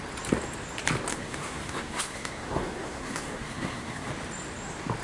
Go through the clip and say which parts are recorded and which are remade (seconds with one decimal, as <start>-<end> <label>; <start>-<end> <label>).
0.0-1.1 recorded; 1.1-4.1 remade; 4.1-5.0 recorded